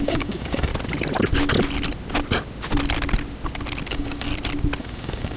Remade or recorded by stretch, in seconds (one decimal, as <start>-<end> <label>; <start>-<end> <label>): 0.0-0.7 remade; 0.7-3.9 recorded; 3.9-4.3 remade; 4.3-4.8 recorded; 4.8-5.4 remade